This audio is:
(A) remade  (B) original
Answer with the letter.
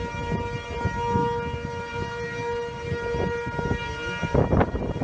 B